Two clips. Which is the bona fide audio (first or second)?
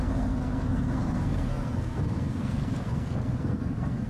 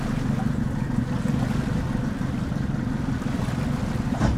second